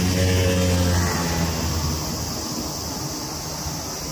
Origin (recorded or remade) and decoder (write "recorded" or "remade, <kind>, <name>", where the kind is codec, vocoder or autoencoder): recorded